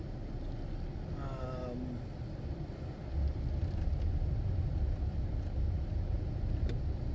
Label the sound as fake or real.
real